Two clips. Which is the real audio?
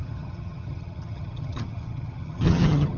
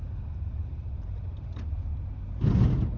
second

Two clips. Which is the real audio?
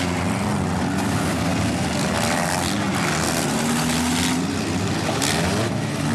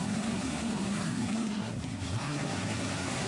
first